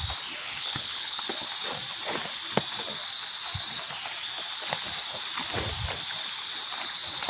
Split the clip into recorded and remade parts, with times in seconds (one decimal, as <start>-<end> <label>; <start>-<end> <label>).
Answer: 0.0-0.4 recorded; 0.4-1.2 remade; 1.2-7.3 recorded